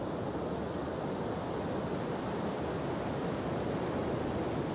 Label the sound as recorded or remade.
recorded